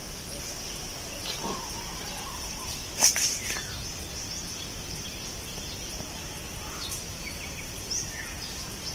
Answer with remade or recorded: recorded